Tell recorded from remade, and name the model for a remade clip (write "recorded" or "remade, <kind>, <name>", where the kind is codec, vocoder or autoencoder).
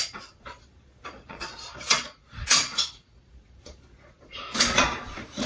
remade, vocoder, Vocos